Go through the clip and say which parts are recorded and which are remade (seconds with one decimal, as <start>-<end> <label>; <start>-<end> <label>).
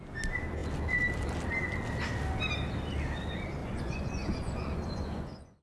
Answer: 0.0-3.6 recorded; 3.6-5.6 remade